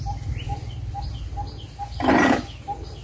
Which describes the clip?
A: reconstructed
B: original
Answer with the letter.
B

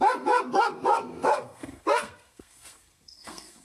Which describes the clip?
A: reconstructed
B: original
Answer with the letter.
A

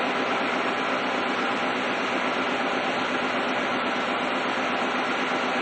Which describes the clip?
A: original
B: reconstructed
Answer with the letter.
A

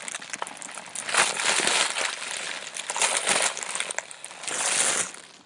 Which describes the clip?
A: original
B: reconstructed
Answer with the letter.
A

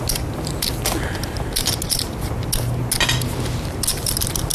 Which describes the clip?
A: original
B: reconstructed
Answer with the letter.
A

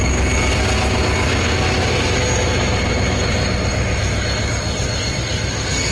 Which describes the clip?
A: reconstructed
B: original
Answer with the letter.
B